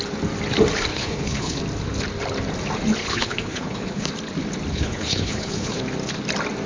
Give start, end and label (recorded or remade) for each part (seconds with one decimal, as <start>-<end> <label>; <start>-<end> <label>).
0.0-0.9 recorded; 0.9-1.6 remade; 1.6-3.0 recorded; 3.0-4.1 remade; 4.1-4.7 recorded; 4.7-5.8 remade; 5.8-6.7 recorded